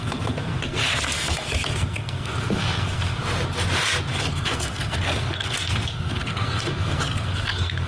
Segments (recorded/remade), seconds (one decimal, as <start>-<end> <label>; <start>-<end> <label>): 0.0-3.2 remade; 3.2-4.1 recorded; 4.1-7.9 remade